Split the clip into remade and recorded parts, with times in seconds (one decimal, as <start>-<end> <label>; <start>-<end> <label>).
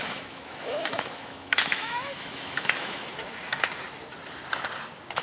0.0-3.1 remade; 3.1-5.2 recorded